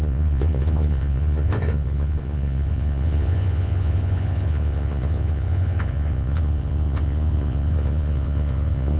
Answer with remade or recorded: remade